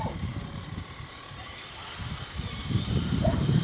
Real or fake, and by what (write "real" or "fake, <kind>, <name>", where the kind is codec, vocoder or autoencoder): fake, vocoder, BigVGAN v2